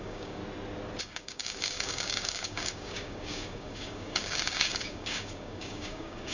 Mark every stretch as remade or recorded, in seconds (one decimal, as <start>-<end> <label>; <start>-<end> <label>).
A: 0.0-0.4 remade; 0.4-1.0 recorded; 1.0-6.3 remade

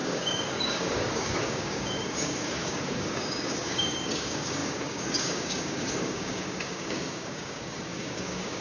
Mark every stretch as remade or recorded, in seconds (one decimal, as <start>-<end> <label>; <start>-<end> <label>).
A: 0.0-8.6 remade

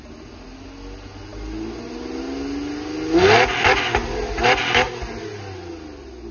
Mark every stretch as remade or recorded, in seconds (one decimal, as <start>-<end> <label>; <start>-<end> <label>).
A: 0.0-6.3 recorded

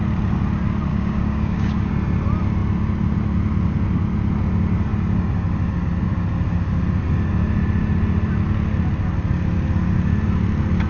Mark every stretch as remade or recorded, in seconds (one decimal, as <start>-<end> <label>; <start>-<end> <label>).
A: 0.0-0.9 recorded; 0.9-1.9 remade; 1.9-10.9 recorded

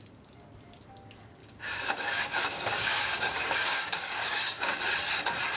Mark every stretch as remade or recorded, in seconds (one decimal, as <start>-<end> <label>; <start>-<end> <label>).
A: 0.0-1.4 recorded; 1.4-4.8 remade; 4.8-5.6 recorded